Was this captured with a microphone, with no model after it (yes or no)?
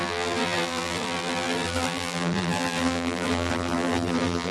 no